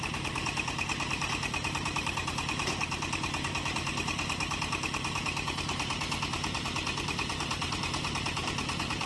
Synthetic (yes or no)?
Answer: yes